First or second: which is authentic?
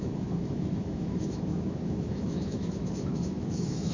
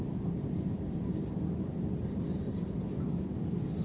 second